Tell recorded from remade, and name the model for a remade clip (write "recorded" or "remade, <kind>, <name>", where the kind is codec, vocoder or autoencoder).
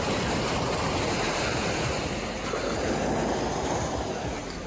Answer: recorded